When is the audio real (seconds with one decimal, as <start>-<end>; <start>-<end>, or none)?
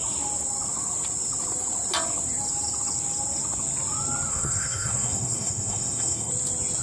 0.0-4.3; 6.3-6.8